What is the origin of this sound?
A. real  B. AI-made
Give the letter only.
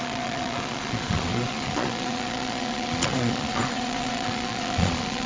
B